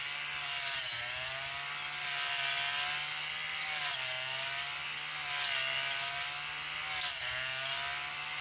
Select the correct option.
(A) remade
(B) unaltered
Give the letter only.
B